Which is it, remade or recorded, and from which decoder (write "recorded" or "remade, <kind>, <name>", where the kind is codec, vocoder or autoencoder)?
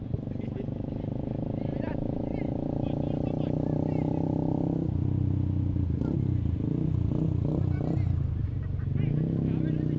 recorded